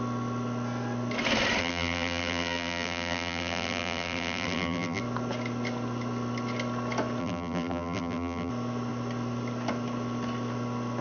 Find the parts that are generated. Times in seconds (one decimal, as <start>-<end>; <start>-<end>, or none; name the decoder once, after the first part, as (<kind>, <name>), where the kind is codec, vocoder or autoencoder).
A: 1.6-5.0 (vocoder, BigVGAN v2); 7.2-8.5